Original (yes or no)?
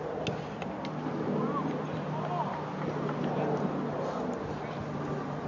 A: yes